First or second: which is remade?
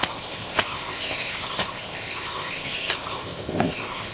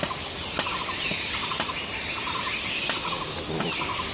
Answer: first